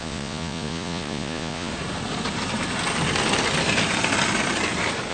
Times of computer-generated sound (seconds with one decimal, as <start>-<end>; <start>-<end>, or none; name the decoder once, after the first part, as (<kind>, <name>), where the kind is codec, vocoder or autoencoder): 0.0-1.7 (vocoder, Vocos)